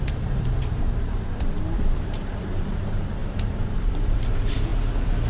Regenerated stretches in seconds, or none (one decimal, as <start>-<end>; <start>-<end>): 0.0-4.7